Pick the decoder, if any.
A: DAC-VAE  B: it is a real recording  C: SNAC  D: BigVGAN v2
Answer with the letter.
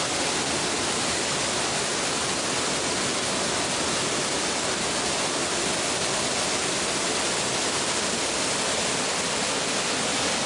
B